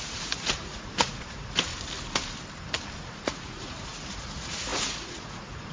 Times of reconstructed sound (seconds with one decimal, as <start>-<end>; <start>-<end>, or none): 0.0-1.7; 3.0-5.7